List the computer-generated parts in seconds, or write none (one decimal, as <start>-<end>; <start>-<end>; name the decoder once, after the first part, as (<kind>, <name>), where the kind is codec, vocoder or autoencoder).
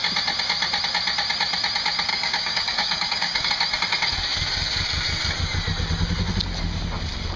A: 2.1-3.5 (codec, DAC)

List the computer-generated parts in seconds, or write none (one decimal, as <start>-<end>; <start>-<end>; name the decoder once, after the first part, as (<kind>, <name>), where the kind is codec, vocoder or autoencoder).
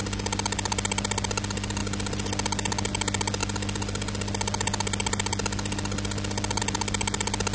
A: none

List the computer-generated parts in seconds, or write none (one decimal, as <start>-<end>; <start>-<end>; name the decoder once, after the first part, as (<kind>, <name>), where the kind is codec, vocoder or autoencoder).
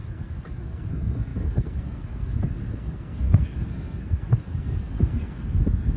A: 0.0-6.0 (codec, SNAC)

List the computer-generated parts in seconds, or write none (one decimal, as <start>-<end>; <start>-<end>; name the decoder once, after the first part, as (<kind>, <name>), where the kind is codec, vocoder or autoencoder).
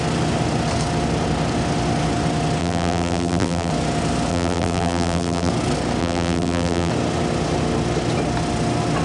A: 2.6-3.7 (vocoder, BigVGAN v2); 4.3-5.5; 6.0-6.9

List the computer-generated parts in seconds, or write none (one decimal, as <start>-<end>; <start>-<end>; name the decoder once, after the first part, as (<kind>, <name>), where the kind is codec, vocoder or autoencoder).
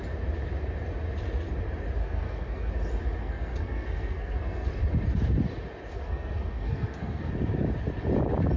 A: 2.0-2.7 (codec, SNAC); 3.2-4.7; 5.9-7.3